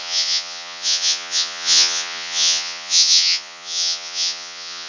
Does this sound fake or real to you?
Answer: fake